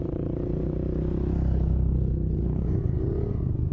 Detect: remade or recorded recorded